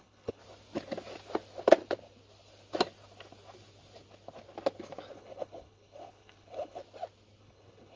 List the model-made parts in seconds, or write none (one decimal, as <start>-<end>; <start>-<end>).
0.0-0.4; 5.1-6.8; 7.4-8.0